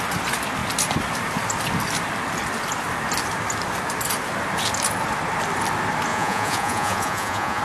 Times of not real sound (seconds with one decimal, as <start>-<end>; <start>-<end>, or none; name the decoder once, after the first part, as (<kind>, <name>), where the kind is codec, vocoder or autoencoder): 6.1-7.6 (vocoder, Vocos)